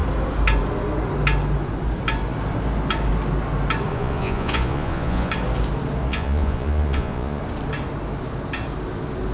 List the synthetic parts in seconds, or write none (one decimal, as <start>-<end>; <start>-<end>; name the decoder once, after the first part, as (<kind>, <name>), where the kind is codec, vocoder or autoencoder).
3.9-5.3 (vocoder, Vocos); 6.1-7.4